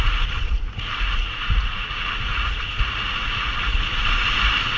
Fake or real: fake